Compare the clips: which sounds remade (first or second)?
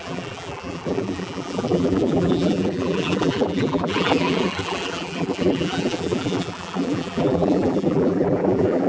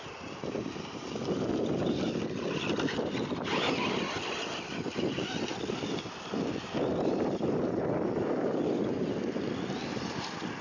first